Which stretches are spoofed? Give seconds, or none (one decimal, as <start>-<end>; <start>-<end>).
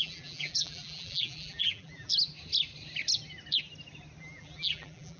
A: 0.0-2.1; 4.2-5.2